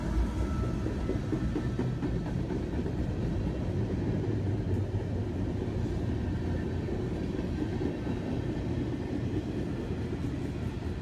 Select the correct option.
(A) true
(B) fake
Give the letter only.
A